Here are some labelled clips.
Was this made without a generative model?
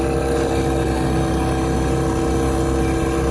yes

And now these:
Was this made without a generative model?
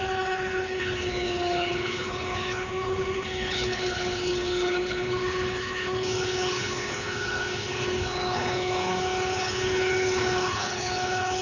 no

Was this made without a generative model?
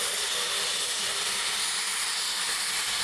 yes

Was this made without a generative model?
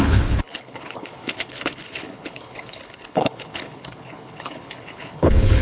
no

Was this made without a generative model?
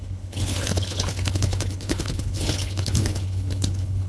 no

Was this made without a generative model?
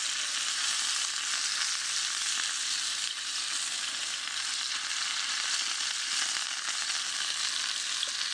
yes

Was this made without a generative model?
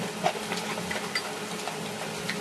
yes